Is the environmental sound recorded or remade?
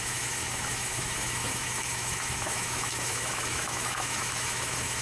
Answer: remade